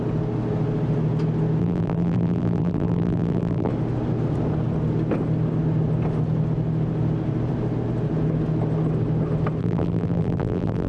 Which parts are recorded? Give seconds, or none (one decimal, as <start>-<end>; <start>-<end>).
0.0-1.6; 3.7-9.6